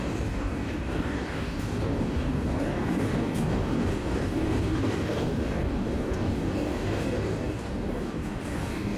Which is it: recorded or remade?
remade